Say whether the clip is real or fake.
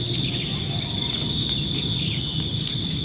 real